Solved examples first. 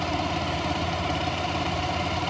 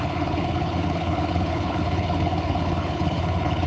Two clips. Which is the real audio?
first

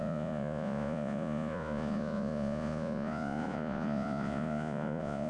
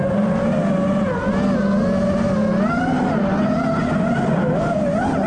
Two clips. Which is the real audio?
second